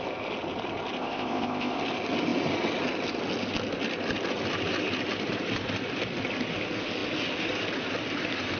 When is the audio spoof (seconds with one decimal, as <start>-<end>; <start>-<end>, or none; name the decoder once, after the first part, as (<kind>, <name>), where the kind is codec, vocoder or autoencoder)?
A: 1.0-1.8 (codec, ZipCodec)